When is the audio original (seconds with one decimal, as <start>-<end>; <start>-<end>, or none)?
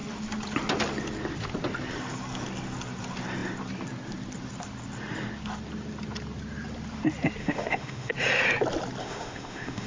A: 0.0-7.4; 8.1-9.0